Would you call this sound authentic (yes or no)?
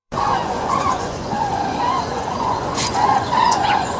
no